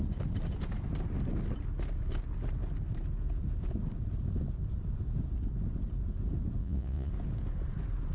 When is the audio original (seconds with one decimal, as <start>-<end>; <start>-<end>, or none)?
0.0-6.6; 7.1-8.1